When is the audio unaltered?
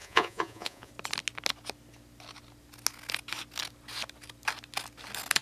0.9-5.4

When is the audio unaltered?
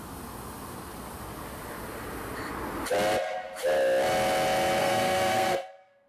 0.0-4.8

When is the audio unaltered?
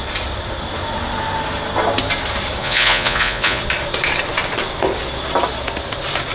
0.0-2.6; 3.6-6.3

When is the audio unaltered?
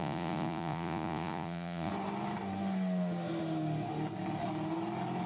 1.9-5.3